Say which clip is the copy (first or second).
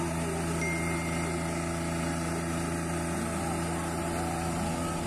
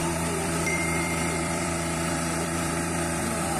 second